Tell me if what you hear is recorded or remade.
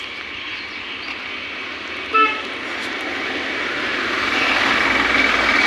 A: recorded